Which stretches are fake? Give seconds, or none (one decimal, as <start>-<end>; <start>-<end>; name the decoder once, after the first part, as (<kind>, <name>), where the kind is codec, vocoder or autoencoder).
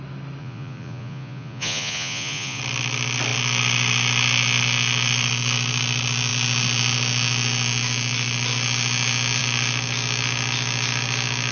0.4-2.6 (vocoder, Vocos)